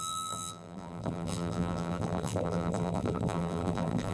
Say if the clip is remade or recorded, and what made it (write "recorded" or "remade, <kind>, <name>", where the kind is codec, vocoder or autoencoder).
remade, vocoder, BigVGAN v2